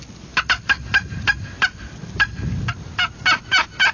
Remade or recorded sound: recorded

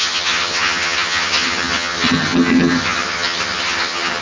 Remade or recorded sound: remade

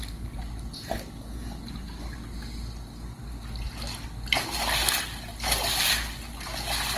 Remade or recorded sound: recorded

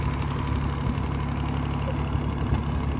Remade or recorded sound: recorded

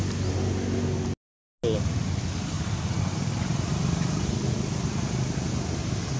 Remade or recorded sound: recorded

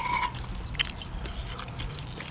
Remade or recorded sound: recorded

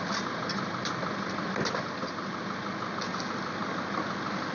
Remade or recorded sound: recorded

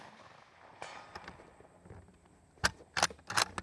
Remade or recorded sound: recorded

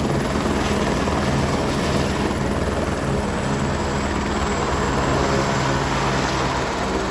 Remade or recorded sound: recorded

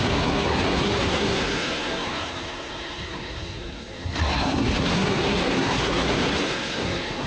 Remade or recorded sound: remade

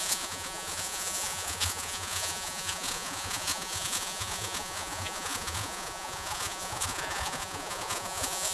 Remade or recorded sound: remade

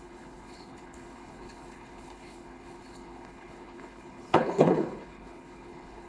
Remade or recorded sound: remade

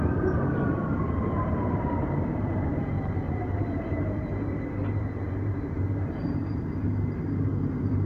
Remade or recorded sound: remade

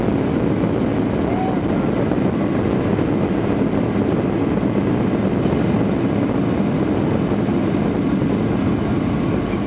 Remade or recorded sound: recorded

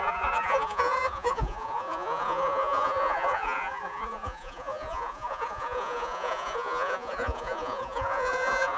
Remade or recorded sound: remade